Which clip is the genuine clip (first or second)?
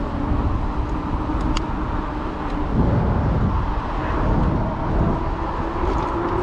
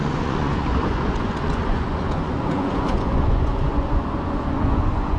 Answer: first